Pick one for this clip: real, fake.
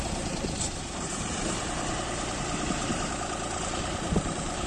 fake